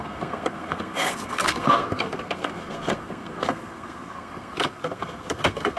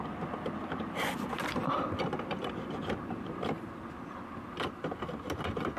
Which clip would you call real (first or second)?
second